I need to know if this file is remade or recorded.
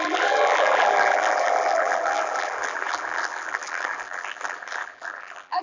remade